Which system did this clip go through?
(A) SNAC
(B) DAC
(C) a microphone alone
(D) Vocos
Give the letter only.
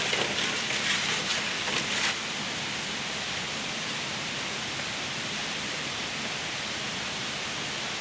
C